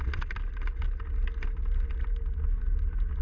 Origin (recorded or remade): recorded